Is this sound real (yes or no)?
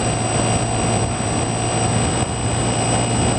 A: yes